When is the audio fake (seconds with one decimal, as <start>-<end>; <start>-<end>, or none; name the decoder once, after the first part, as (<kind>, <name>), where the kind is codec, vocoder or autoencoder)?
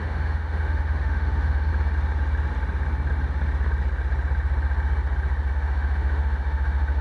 0.0-1.7 (autoencoder, DAC-VAE); 5.5-7.0